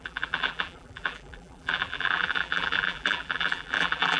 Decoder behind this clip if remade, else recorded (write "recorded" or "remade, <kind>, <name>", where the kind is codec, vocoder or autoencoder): remade, vocoder, BigVGAN v2